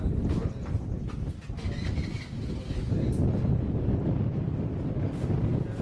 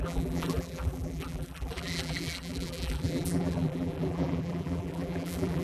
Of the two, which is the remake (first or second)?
second